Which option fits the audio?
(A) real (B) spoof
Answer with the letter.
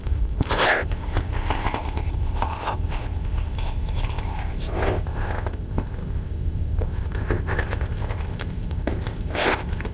B